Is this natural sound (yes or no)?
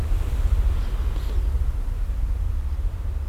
yes